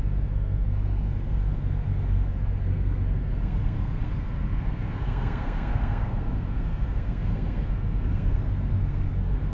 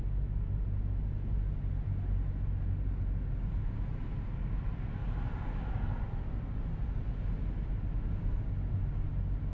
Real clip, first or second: second